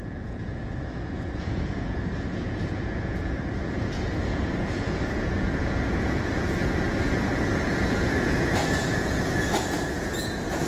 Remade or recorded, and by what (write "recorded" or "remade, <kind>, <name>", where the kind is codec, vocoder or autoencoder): remade, vocoder, Vocos